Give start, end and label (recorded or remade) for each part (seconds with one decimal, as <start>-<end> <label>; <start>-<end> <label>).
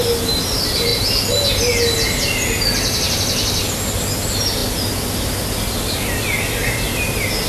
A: 0.0-7.5 recorded